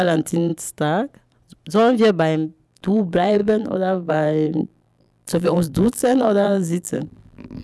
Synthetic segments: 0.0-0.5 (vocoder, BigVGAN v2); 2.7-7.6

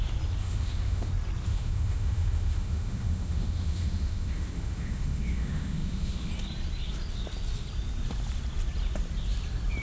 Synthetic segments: 0.4-1.1 (autoencoder, DAC-VAE); 1.5-6.3

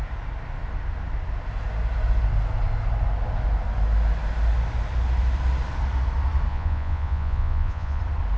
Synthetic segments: 6.5-8.0 (vocoder, Vocos)